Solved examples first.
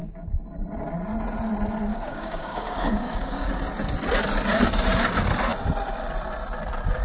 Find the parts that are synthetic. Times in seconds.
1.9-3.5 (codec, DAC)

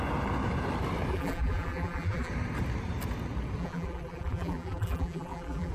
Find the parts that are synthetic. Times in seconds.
1.1-2.3 (vocoder, BigVGAN v2); 3.6-5.7

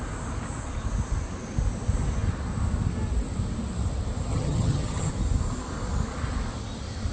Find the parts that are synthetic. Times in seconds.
4.3-5.1 (vocoder, HiFi-GAN)

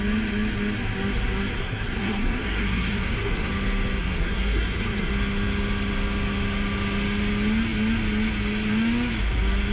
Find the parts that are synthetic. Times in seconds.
1.6-3.5 (codec, SNAC); 4.0-5.1

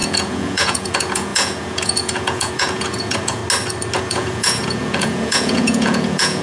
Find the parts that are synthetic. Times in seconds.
0.0-3.4 (vocoder, Vocos); 4.0-6.4